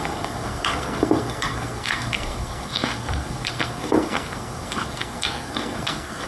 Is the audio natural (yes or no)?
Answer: no